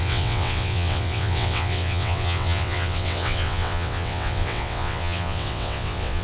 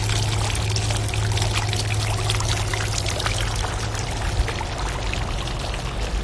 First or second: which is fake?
first